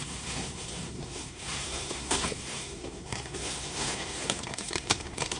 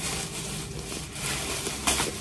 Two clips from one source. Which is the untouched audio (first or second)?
second